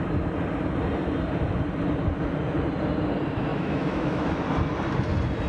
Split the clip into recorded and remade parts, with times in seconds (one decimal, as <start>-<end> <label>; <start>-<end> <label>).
0.0-3.5 recorded; 3.5-4.4 remade; 4.4-5.5 recorded